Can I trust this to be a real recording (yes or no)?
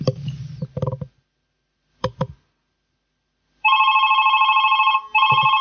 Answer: yes